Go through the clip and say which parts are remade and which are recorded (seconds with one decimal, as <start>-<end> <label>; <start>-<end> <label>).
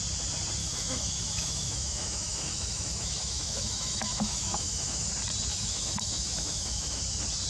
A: 0.0-0.6 recorded; 0.6-5.1 remade; 5.1-5.5 recorded; 5.5-7.0 remade; 7.0-7.5 recorded